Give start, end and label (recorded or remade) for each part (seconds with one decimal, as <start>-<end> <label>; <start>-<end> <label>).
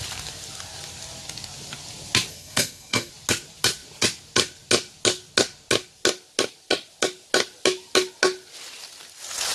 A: 0.0-2.3 recorded; 2.3-3.1 remade; 3.1-9.5 recorded